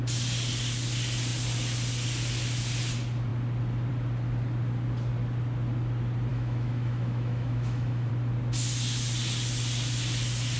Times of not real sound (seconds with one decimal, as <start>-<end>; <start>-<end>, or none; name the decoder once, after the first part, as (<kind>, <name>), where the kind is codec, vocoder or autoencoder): 6.3-8.1 (autoencoder, DAC-VAE)